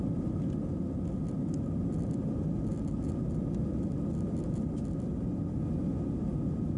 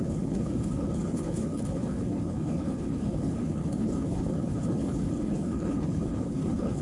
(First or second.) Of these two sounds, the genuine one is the first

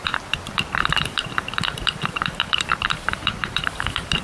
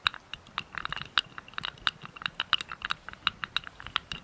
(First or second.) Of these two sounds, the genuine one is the second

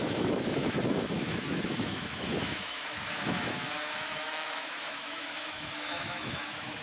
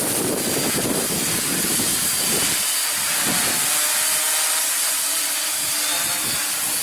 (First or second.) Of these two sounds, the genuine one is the second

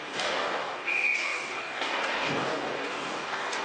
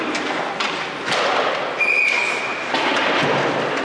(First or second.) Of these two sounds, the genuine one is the second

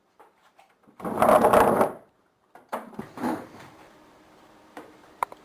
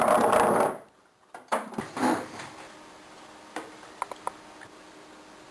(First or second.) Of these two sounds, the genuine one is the second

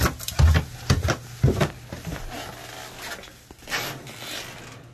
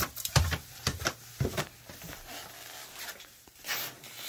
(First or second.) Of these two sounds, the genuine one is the first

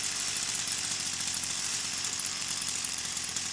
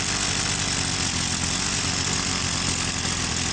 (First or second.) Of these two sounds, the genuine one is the second